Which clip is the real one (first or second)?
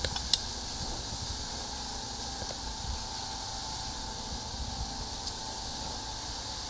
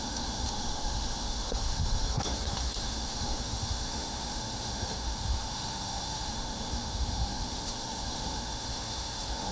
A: first